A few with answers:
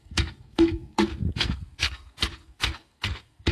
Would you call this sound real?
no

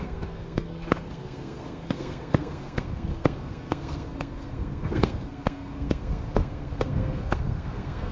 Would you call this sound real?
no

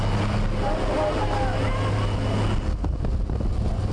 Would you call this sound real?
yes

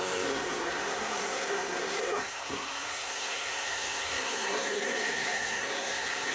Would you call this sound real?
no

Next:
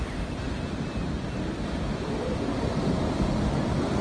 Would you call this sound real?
yes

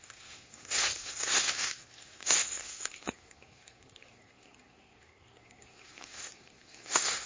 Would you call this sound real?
no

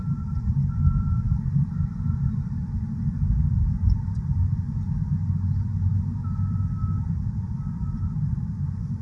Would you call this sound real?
yes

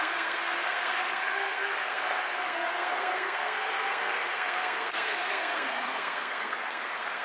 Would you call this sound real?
no